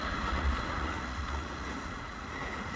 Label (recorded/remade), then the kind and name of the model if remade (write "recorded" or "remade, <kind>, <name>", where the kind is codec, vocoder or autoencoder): remade, vocoder, Vocos